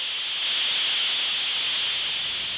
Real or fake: real